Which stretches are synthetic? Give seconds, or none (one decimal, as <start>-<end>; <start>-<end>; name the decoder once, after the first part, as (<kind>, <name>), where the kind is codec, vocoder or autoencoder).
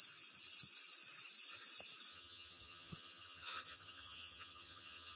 2.1-5.2 (vocoder, HiFi-GAN)